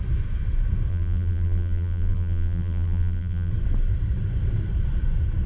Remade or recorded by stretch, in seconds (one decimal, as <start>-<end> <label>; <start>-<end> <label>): 0.0-0.9 recorded; 0.9-3.5 remade; 3.5-5.5 recorded